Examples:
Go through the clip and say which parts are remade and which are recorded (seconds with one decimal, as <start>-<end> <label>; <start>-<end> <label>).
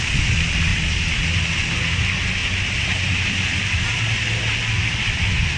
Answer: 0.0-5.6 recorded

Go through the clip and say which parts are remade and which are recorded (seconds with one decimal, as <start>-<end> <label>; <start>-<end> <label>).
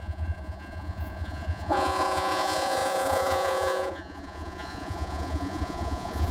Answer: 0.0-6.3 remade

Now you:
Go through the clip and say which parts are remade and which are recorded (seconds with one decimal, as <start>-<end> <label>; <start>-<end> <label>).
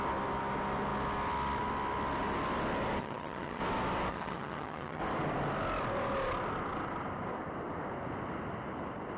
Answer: 0.0-3.0 recorded; 3.0-3.6 remade; 3.6-4.1 recorded; 4.1-5.0 remade; 5.0-9.2 recorded